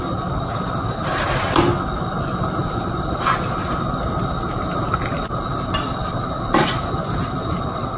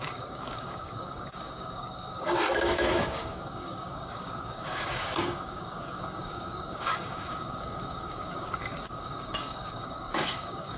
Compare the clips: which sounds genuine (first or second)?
first